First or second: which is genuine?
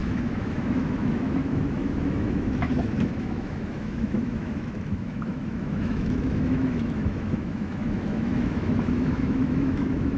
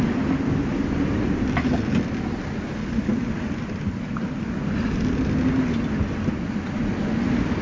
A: second